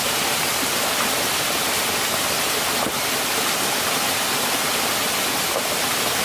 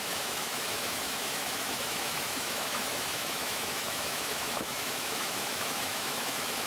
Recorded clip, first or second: first